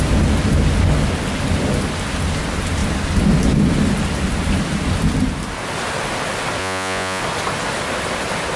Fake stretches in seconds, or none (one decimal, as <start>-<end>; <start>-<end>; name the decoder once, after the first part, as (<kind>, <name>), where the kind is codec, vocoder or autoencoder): 6.6-7.2 (vocoder, Vocos)